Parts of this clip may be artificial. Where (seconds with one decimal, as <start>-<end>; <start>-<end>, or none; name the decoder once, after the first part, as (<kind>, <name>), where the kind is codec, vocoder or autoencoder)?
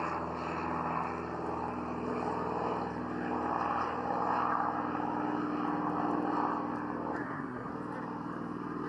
7.2-7.7 (codec, SNAC)